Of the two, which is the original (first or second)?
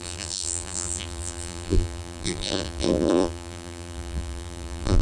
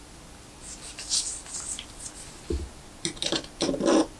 second